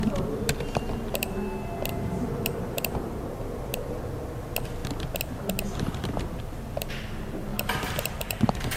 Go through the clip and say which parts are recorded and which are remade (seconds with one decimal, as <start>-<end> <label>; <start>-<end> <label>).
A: 0.0-1.9 recorded; 1.9-3.6 remade; 3.6-7.5 recorded; 7.5-8.8 remade